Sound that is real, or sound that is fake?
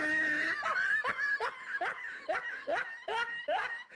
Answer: real